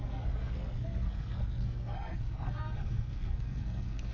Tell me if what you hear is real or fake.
fake